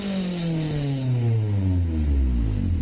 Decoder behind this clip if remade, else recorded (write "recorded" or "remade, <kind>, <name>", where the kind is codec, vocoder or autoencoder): recorded